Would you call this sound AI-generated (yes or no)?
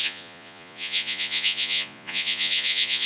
yes